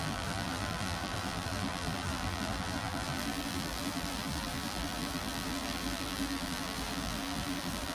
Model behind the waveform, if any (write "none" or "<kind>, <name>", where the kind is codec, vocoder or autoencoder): vocoder, BigVGAN v2